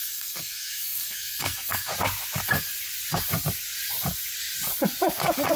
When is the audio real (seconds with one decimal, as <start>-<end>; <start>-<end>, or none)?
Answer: 1.9-5.6